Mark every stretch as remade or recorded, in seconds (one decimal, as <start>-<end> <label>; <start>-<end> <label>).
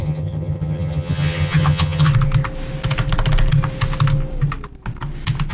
0.0-2.1 remade; 2.1-5.5 recorded